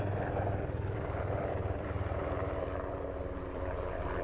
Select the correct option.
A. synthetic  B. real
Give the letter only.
A